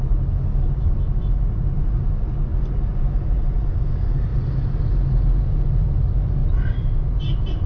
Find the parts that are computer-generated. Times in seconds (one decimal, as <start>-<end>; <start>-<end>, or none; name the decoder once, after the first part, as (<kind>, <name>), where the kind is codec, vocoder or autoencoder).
none